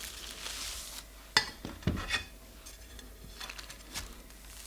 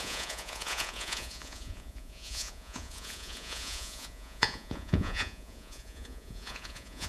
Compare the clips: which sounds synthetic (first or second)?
second